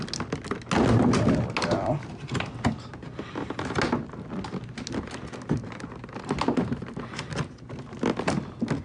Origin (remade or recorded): recorded